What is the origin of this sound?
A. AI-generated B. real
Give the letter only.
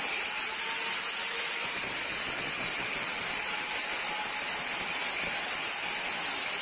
B